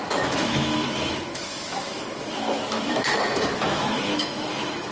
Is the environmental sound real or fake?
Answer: fake